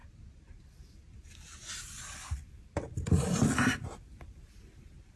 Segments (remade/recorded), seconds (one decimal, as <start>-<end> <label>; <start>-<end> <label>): 0.0-5.2 remade